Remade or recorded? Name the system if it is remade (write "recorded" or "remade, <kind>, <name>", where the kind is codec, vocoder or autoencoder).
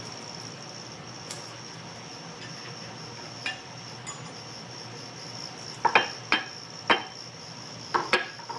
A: recorded